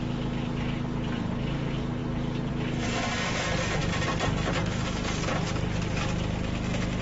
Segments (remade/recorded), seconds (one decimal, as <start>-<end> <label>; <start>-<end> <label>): 0.0-7.0 recorded